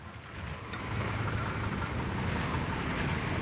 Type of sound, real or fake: real